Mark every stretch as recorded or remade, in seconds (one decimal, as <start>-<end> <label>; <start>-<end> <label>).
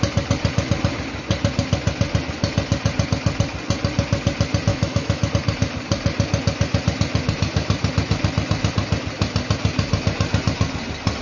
0.0-4.7 recorded; 4.7-5.3 remade; 5.3-11.2 recorded